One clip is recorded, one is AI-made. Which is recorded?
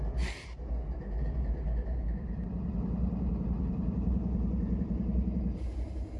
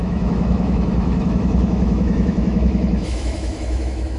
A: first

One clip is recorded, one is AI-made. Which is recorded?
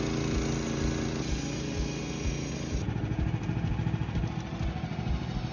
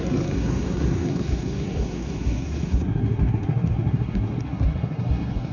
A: first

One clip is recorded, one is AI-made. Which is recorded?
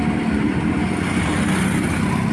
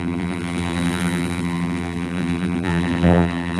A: first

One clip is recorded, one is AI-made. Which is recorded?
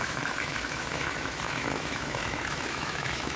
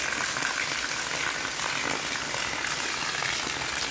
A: second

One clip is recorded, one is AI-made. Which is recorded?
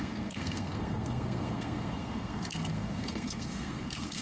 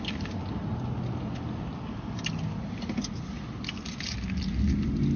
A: second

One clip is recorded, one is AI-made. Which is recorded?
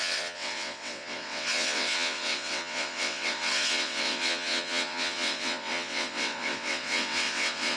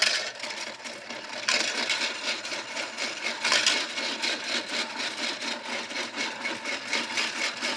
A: second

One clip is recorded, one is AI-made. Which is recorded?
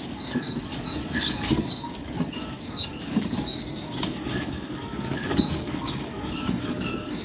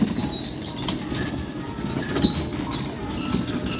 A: second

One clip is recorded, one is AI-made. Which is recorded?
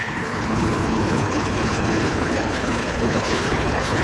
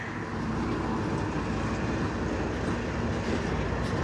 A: second